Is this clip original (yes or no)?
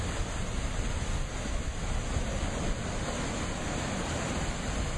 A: yes